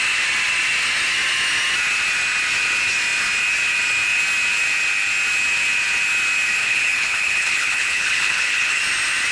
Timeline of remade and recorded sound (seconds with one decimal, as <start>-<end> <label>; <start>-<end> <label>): 0.0-6.6 recorded; 6.6-8.8 remade; 8.8-9.3 recorded